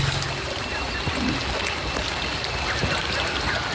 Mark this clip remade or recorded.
recorded